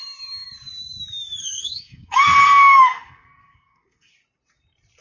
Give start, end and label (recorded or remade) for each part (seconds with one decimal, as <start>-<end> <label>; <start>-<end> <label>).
0.0-1.4 recorded; 1.4-4.1 remade; 4.1-5.0 recorded